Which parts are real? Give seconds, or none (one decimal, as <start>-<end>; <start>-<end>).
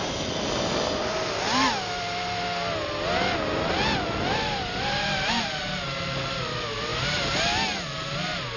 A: 0.0-8.6